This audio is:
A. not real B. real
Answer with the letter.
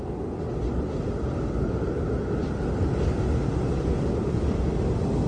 B